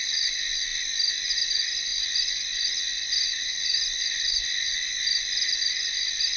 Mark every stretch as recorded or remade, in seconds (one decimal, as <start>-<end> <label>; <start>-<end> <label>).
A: 0.0-6.4 recorded